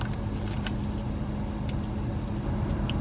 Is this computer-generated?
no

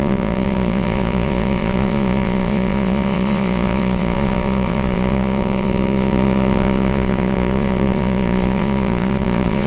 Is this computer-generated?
yes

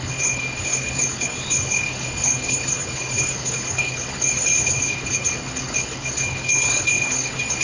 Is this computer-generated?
yes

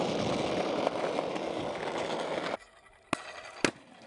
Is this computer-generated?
no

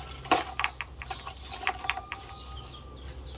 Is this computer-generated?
no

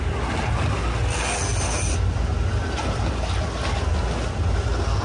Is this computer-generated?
no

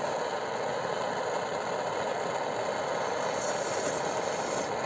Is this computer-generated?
no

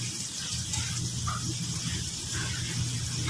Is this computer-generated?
no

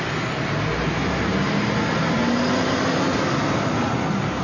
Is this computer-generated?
no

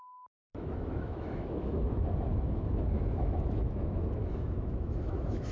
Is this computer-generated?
yes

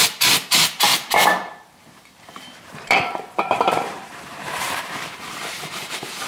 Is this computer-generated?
yes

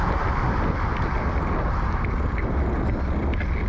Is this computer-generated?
no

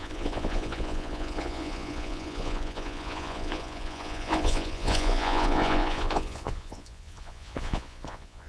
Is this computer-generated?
yes